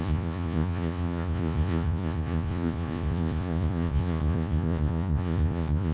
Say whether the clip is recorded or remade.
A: remade